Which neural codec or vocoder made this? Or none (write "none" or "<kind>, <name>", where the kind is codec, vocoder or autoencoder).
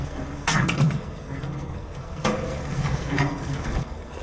codec, SNAC